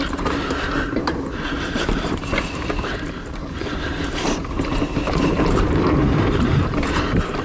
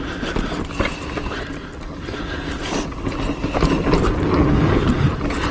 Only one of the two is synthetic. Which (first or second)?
first